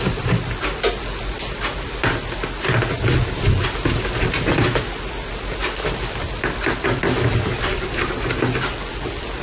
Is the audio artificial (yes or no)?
no